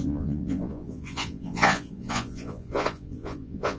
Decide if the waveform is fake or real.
fake